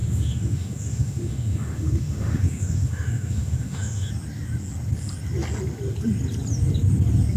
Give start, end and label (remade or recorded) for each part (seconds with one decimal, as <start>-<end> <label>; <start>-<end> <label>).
0.0-4.1 remade; 4.1-7.4 recorded